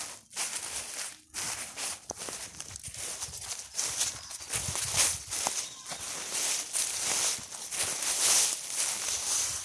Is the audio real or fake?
real